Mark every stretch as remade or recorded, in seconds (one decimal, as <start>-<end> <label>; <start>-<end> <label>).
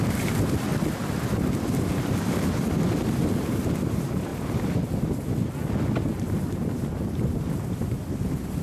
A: 0.0-0.7 remade; 0.7-3.4 recorded; 3.4-4.3 remade; 4.3-7.5 recorded; 7.5-8.6 remade